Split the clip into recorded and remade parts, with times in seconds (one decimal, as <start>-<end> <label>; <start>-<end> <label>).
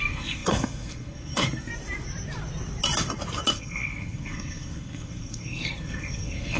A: 0.0-1.7 remade; 1.7-3.5 recorded; 3.5-6.6 remade